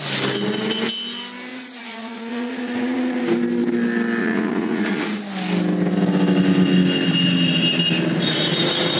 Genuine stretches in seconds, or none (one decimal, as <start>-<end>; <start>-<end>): 0.0-1.5; 3.2-4.2; 5.2-9.0